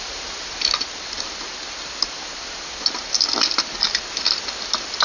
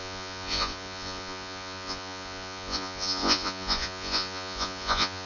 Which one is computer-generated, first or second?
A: second